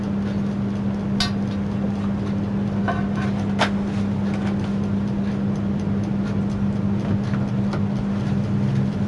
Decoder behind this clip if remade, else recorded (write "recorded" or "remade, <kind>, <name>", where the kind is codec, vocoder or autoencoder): recorded